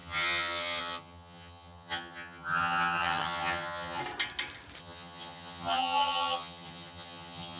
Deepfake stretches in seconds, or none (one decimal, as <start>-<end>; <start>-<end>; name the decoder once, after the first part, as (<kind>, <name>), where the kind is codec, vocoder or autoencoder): 0.0-4.0 (vocoder, HiFi-GAN); 4.8-7.6